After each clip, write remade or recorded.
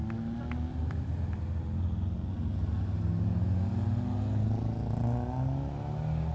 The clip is recorded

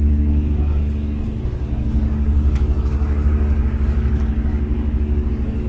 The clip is remade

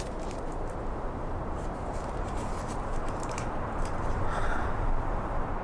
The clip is remade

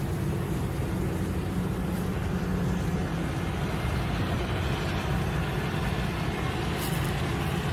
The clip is recorded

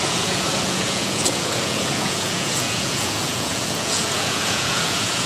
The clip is remade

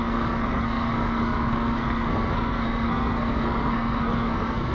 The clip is remade